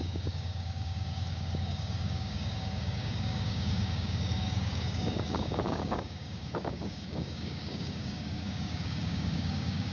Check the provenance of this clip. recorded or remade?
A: remade